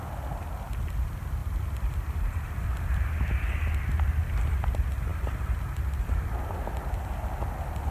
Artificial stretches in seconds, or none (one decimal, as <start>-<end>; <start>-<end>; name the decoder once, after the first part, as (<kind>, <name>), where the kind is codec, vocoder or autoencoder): 1.4-3.1 (vocoder, BigVGAN v2); 5.1-7.1